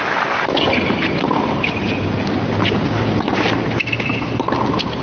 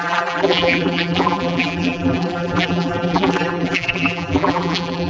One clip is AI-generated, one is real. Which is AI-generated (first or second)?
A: second